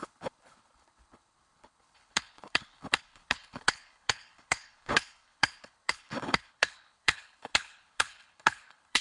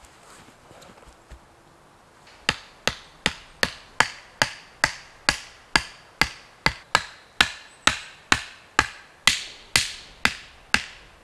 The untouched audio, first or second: second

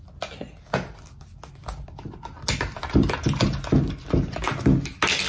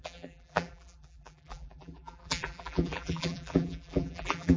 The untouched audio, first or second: first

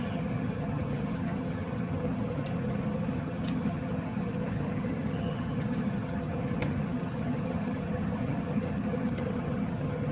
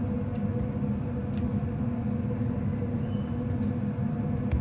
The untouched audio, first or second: second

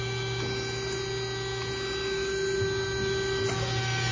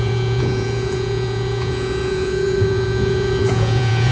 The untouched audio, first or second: first